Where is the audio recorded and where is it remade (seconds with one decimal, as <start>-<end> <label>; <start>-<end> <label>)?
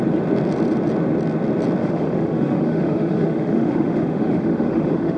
0.0-1.8 recorded; 1.8-5.2 remade